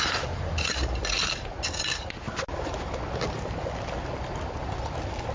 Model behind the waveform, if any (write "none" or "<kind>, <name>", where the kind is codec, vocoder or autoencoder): none